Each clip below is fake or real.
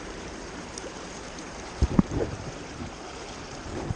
fake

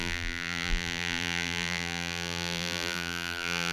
fake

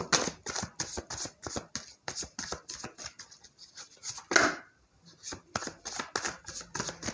real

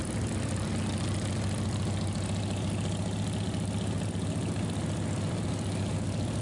real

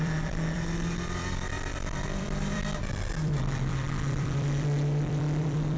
fake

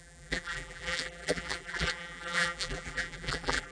fake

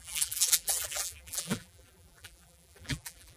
fake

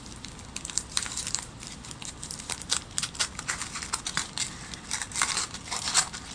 fake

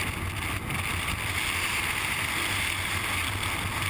real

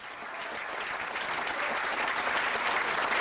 real